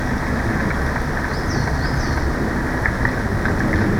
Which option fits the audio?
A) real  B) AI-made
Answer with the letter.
A